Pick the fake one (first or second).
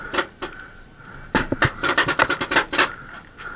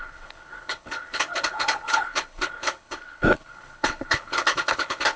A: second